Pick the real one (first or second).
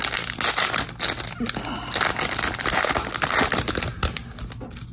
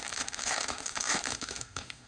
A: first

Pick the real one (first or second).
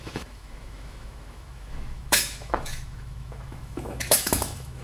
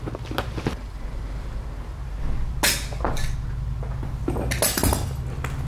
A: second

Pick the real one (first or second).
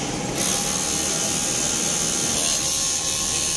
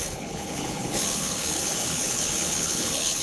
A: first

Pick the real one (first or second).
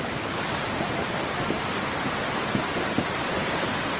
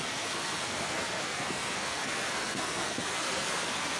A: first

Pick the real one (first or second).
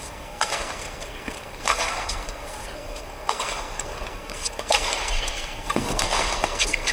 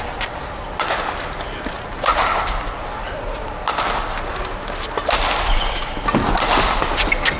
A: second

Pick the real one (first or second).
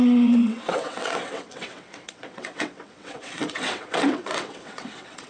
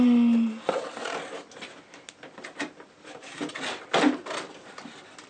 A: second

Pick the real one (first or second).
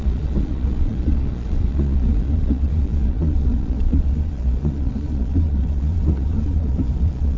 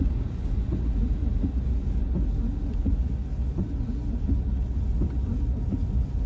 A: second